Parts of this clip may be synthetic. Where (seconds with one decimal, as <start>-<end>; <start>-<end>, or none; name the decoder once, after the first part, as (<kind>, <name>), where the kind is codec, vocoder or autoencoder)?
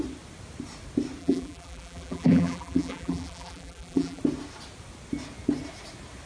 1.2-4.2 (vocoder, BigVGAN v2)